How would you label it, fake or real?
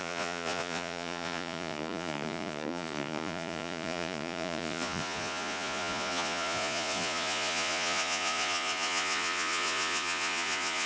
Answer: fake